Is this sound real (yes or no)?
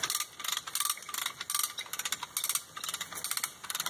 yes